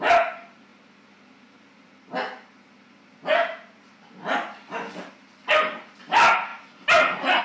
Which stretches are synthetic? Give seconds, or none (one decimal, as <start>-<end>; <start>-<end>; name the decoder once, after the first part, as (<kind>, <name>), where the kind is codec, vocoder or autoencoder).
none